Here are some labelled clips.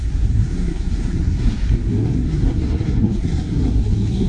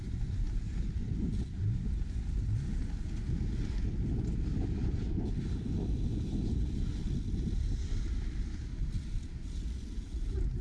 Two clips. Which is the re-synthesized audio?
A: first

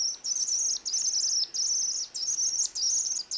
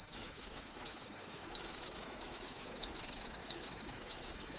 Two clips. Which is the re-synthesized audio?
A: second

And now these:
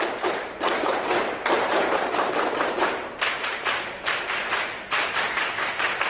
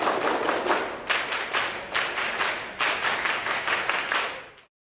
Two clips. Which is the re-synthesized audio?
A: first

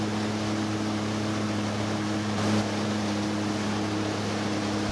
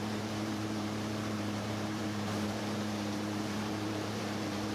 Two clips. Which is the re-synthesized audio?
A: second